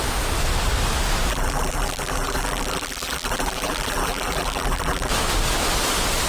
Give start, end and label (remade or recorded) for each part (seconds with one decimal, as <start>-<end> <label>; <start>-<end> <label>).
0.0-1.3 recorded; 1.3-5.1 remade; 5.1-6.3 recorded